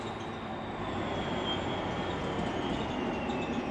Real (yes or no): yes